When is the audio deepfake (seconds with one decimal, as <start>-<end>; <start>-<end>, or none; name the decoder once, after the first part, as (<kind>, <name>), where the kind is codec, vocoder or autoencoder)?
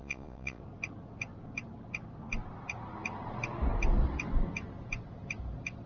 0.0-0.6 (vocoder, Vocos)